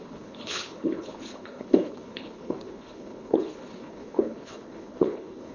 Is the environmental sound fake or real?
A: fake